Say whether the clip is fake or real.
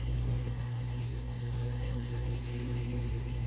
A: fake